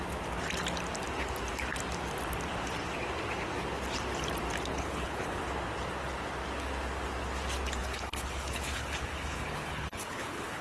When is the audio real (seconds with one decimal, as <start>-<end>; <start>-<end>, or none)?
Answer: 0.0-4.7; 5.4-7.8